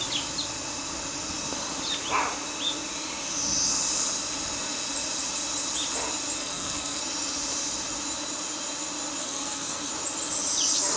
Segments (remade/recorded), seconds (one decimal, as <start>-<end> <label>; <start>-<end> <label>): 0.0-6.4 recorded; 6.4-7.0 remade; 7.0-9.2 recorded; 9.2-9.9 remade; 9.9-11.0 recorded